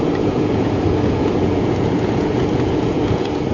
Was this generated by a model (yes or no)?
yes